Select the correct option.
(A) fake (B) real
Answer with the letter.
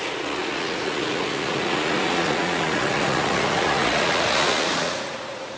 A